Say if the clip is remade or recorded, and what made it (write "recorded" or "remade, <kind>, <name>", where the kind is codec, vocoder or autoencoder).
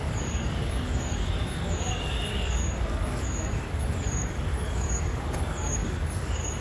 remade, codec, DAC